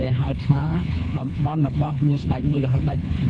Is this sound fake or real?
fake